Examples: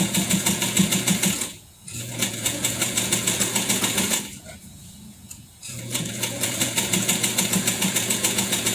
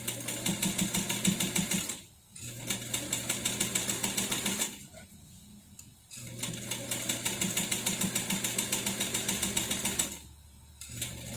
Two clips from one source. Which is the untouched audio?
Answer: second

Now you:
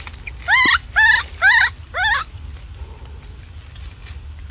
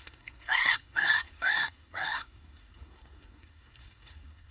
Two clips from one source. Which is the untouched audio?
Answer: first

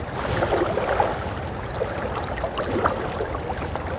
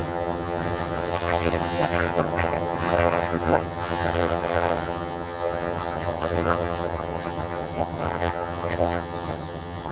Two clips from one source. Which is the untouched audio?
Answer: first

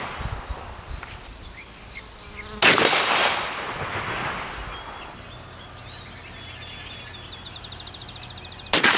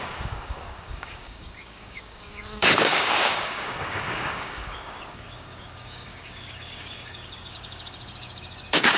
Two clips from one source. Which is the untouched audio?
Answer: first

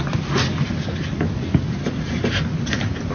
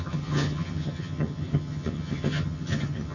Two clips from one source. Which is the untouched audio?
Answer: first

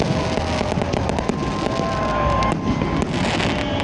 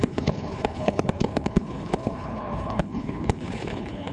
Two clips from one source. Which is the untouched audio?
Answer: first